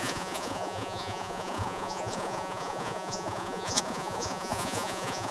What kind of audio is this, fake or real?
fake